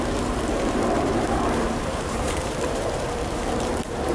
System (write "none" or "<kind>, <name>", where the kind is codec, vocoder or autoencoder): vocoder, BigVGAN v2